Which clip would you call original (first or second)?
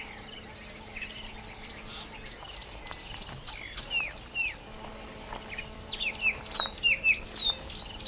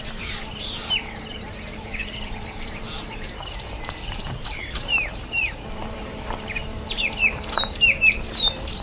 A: first